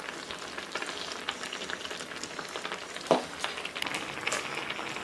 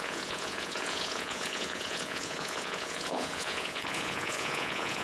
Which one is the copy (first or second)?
second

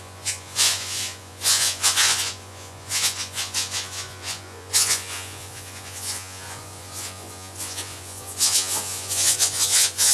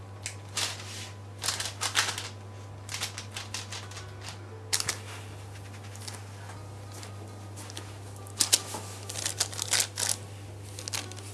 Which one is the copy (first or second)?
first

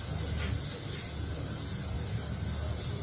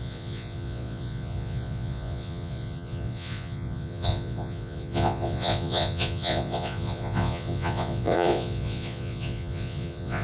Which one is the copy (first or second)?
second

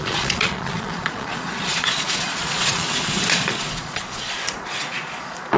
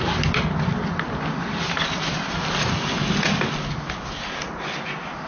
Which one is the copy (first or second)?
first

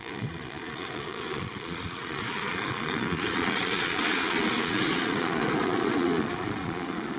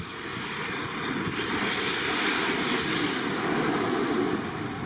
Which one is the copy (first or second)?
first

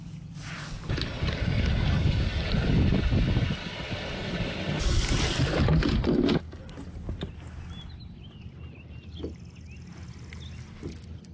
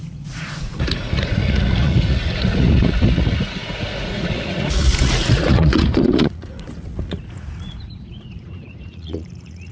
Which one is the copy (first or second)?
second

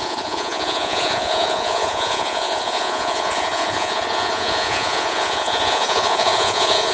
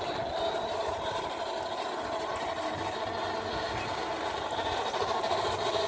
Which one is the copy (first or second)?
first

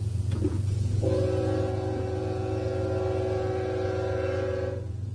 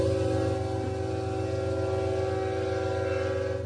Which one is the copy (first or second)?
first